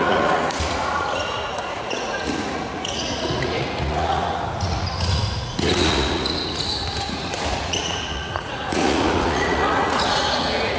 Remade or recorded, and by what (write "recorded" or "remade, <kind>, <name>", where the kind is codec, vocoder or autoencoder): remade, vocoder, Vocos